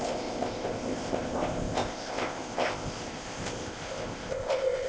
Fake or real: fake